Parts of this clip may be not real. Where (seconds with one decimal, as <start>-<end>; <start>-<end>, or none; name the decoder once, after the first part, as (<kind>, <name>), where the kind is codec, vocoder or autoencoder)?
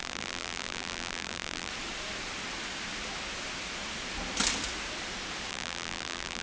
0.0-1.7 (vocoder, BigVGAN v2); 5.5-6.4